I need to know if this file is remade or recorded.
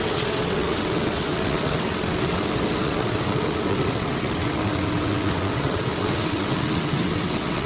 remade